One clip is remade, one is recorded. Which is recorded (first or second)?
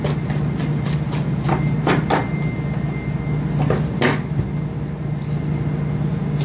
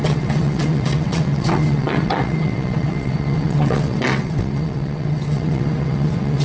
first